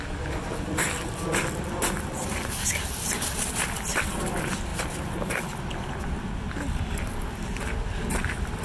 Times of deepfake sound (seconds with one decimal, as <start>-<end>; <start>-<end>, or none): none